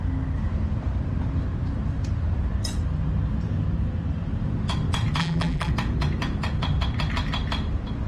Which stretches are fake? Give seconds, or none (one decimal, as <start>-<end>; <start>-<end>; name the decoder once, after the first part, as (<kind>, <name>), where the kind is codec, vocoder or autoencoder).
5.2-5.7 (vocoder, BigVGAN v2)